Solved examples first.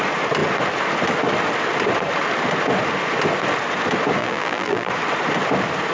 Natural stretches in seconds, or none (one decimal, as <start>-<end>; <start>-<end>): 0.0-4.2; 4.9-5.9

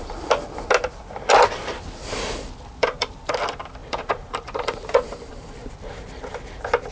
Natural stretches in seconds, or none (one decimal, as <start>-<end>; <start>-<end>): 0.0-2.8; 3.3-3.8; 5.3-6.9

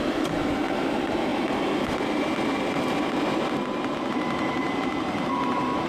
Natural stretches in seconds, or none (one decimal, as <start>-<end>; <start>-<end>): 1.3-4.1

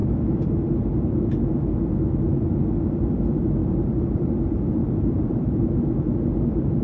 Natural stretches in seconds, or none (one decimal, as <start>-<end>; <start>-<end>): 0.7-3.6; 4.3-4.8; 5.6-6.8

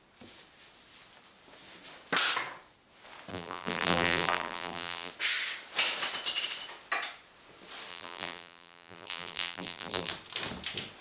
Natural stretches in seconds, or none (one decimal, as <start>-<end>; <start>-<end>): 0.0-3.3; 5.1-7.9; 10.1-11.0

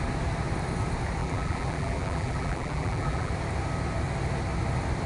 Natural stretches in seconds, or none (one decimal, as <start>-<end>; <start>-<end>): 0.0-1.2; 3.3-5.1